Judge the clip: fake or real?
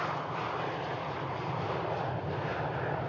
real